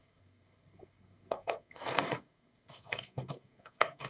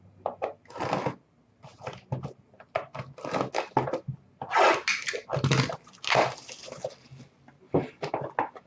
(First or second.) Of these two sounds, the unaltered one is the second